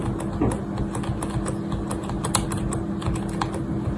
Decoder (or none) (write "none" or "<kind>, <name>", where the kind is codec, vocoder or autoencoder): none